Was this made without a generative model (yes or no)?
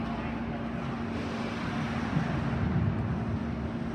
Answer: yes